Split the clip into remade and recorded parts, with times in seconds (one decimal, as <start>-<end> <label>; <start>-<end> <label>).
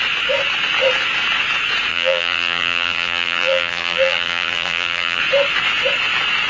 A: 0.0-1.9 recorded; 1.9-5.2 remade; 5.2-6.5 recorded